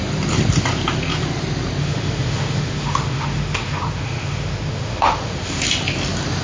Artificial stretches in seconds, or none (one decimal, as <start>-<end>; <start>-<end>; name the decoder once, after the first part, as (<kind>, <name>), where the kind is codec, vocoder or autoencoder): 1.8-5.6 (autoencoder, DAC-VAE)

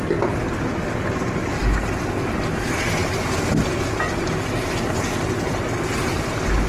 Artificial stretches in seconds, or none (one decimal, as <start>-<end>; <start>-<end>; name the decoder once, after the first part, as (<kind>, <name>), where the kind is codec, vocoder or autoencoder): none

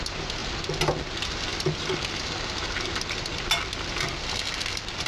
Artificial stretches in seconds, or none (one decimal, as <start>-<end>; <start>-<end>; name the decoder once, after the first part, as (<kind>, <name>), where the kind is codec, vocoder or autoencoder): none

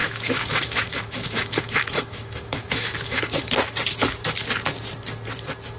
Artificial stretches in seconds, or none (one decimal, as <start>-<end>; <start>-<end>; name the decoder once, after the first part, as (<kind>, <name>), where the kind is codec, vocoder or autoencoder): 0.0-3.5 (autoencoder, DAC-VAE)